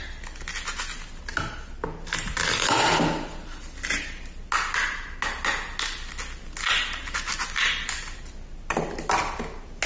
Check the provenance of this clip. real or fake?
real